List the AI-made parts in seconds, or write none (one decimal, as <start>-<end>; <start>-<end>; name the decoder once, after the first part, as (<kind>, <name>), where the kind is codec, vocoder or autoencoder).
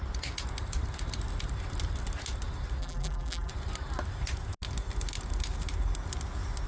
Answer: 2.8-3.5 (vocoder, BigVGAN v2)